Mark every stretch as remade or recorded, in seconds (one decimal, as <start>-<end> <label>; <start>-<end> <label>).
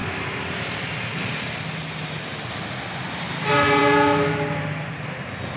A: 0.0-5.6 recorded